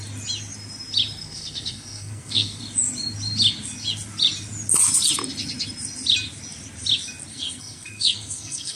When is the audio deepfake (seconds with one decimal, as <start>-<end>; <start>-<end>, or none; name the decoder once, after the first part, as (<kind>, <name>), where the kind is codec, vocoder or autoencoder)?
1.2-2.6 (codec, SNAC); 7.3-8.8